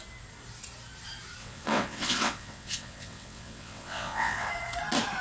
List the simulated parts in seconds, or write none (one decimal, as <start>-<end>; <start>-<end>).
1.4-4.5